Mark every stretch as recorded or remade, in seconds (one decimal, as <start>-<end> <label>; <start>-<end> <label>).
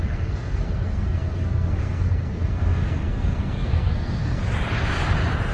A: 0.0-4.4 remade; 4.4-5.5 recorded